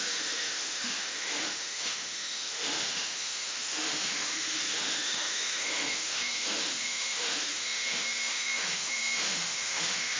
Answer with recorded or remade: remade